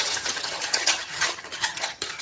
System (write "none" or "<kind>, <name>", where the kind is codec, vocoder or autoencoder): vocoder, HiFi-GAN